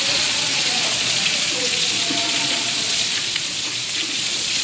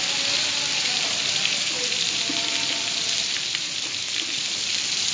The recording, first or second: second